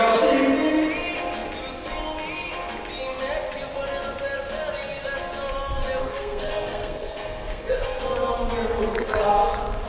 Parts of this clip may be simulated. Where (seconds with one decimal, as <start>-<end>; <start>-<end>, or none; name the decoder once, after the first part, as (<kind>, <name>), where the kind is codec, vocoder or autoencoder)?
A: 6.0-7.8 (codec, SNAC); 9.0-9.5